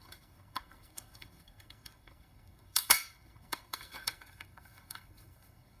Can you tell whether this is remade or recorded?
remade